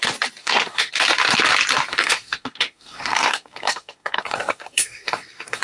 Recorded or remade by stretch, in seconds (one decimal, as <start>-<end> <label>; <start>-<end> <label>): 0.0-0.4 recorded; 0.4-0.9 remade; 0.9-1.9 recorded; 1.9-5.6 remade